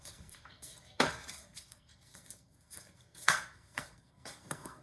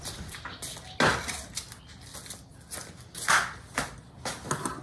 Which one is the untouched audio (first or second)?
second